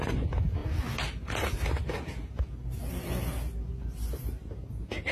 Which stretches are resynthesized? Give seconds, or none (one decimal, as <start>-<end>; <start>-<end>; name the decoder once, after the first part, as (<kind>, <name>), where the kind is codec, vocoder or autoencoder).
none